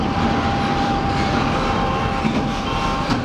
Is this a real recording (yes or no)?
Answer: no